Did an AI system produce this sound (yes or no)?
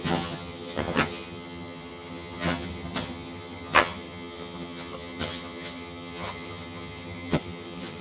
yes